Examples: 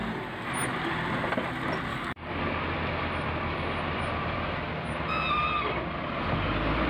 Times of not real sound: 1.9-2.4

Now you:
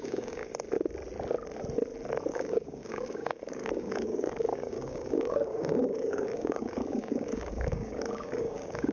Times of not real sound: 0.0-0.5; 2.3-8.9

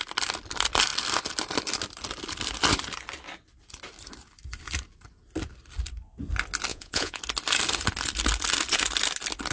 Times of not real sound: 6.7-7.2

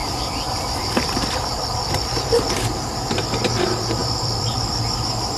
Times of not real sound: 0.0-3.2; 4.0-5.4